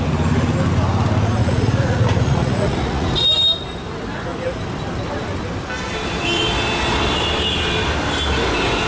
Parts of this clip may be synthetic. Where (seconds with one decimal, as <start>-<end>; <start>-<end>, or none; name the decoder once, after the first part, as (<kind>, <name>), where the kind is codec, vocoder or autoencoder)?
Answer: 1.4-3.1 (vocoder, Vocos)